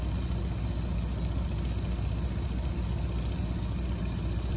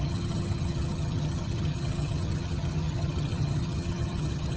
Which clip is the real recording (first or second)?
first